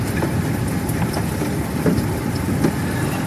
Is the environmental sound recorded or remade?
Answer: remade